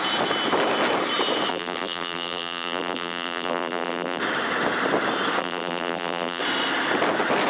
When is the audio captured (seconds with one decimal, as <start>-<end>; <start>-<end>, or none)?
0.0-1.5; 4.2-5.4; 6.4-7.5